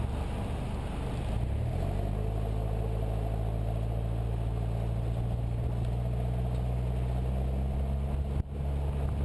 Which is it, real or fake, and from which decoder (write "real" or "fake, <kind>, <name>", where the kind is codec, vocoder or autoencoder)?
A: real